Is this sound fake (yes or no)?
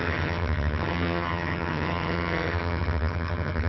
yes